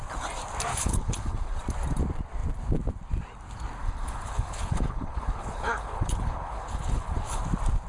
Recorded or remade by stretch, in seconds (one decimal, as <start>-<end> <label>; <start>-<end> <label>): 0.0-0.7 recorded; 0.7-1.6 remade; 1.6-3.8 recorded; 3.8-7.4 remade; 7.4-7.9 recorded